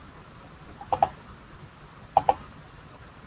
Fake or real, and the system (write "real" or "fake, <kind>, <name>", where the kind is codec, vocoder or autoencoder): real